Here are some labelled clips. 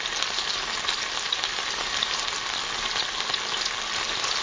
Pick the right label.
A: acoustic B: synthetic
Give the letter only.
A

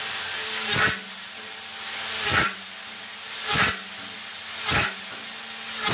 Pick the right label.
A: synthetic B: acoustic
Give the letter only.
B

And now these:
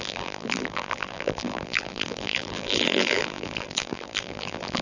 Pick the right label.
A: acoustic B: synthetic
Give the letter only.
B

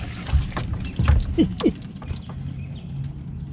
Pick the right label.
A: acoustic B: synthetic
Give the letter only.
A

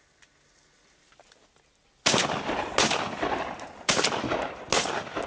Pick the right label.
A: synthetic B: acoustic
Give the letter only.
B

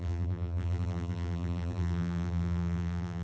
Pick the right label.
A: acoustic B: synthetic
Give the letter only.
B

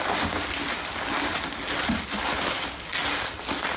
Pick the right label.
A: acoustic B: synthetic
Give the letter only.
A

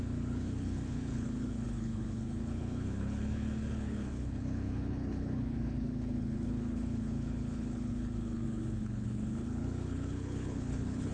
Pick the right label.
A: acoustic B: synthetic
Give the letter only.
B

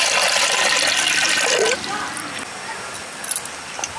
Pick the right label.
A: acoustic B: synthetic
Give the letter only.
A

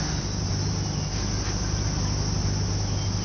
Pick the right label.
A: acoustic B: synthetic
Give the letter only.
A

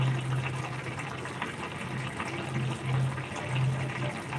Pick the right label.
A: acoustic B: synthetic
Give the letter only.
A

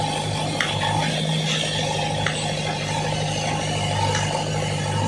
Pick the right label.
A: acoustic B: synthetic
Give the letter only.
A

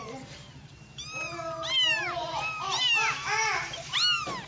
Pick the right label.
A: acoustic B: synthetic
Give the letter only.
A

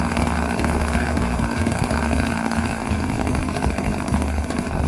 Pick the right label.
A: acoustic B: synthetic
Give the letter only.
B